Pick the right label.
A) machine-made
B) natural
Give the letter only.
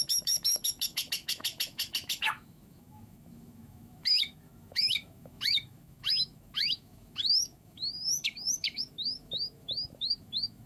A